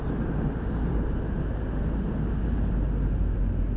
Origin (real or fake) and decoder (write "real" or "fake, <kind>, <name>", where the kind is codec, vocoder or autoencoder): real